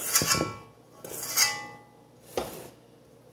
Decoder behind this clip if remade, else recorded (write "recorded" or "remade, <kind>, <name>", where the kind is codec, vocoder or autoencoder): recorded